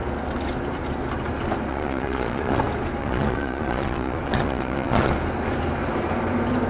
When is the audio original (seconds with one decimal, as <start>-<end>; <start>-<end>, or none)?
0.0-1.7; 2.6-3.0; 5.1-6.7

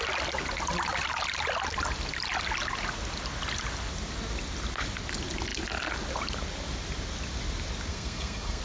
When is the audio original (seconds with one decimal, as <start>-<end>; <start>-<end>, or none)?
0.0-7.9

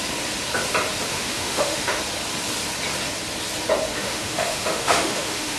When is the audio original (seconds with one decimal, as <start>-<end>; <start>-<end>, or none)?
0.0-1.1; 2.0-3.9

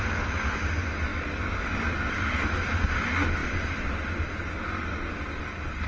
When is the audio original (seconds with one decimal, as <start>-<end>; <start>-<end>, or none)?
0.0-5.9

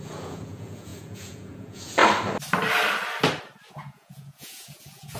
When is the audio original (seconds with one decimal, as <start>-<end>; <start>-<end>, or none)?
2.0-3.7

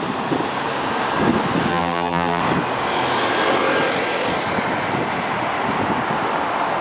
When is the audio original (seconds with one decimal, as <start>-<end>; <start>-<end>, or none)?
0.0-1.7; 2.4-6.8